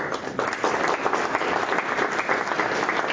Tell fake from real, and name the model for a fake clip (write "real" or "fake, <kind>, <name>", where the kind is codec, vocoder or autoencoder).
real